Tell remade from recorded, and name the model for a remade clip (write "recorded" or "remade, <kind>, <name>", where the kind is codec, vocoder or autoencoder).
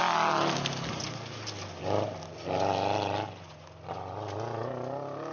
recorded